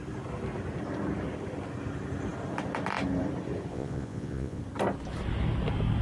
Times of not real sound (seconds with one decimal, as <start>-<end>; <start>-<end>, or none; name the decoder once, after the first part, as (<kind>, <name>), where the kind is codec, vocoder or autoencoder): 3.7-4.6 (vocoder, Vocos)